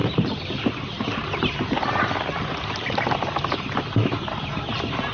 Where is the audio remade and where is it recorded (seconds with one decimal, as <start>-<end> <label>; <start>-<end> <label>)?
0.0-5.1 recorded